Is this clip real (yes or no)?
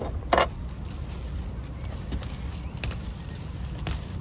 yes